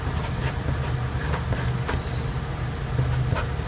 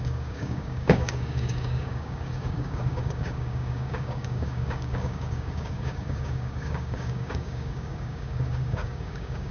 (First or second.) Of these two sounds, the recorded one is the first